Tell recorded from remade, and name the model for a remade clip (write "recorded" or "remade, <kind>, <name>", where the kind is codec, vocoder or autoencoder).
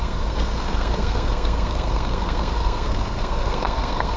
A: remade, codec, SNAC